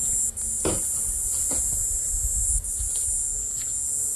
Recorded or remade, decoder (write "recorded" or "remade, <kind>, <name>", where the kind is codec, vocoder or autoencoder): recorded